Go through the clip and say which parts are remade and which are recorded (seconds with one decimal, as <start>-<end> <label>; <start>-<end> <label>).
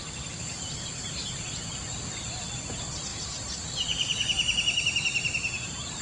0.0-0.8 recorded; 0.8-2.0 remade; 2.0-3.1 recorded; 3.1-6.0 remade